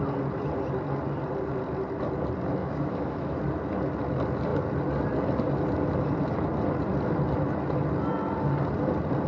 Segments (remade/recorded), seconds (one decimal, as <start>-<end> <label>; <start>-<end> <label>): 0.0-2.6 recorded; 2.6-3.4 remade; 3.4-9.3 recorded